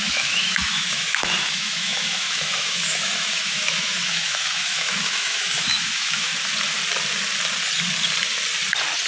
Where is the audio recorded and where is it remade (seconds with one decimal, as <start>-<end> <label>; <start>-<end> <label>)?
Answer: 0.0-6.3 remade; 6.3-9.1 recorded